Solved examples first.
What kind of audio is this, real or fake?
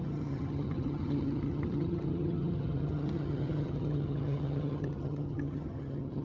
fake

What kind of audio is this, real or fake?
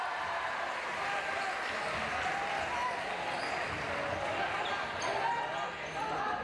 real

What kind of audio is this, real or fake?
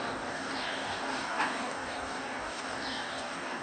fake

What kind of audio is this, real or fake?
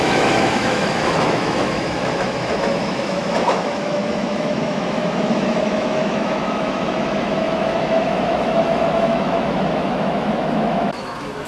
fake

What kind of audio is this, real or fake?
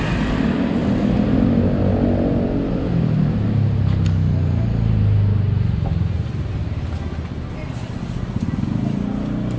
real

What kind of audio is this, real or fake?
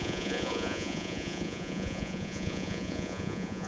fake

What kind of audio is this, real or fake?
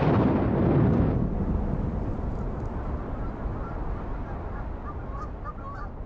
real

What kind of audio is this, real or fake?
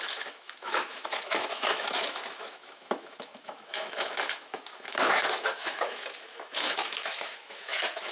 fake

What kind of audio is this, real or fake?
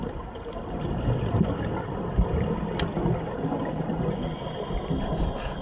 real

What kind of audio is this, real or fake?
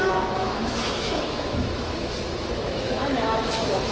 fake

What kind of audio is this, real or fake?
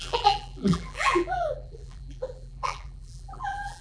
fake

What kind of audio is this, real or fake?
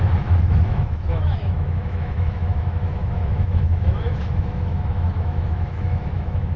fake